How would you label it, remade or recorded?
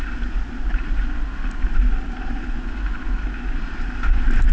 recorded